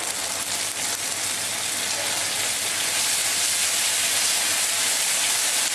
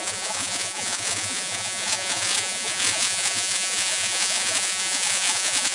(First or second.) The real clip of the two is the first